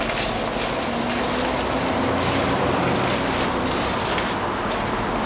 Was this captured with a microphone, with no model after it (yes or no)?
yes